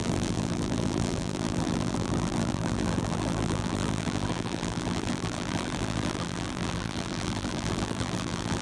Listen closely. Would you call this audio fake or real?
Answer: fake